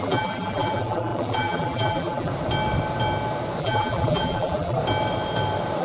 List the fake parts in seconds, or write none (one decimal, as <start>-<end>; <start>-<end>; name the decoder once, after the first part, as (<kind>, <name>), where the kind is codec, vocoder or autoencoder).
0.0-2.3 (vocoder, BigVGAN v2); 3.6-4.8